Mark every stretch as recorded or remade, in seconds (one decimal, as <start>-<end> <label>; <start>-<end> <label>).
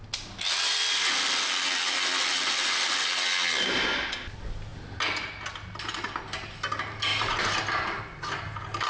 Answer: 0.0-8.9 recorded